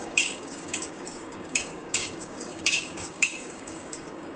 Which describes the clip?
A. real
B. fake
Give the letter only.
B